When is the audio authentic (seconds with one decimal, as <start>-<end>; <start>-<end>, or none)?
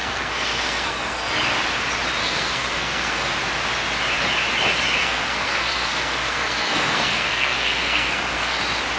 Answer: 1.3-2.2; 3.3-5.0; 8.6-9.0